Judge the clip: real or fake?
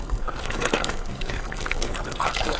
fake